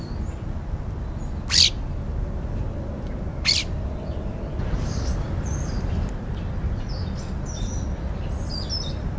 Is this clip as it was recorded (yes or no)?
yes